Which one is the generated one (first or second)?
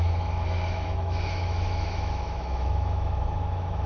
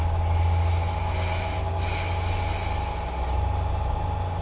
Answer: first